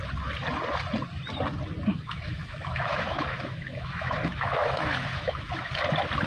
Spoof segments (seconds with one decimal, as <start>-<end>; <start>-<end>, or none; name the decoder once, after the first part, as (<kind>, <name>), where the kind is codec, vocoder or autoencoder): 1.9-5.7 (autoencoder, DAC-VAE)